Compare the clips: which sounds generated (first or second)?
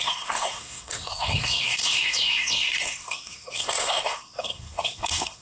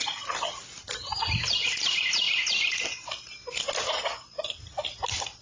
first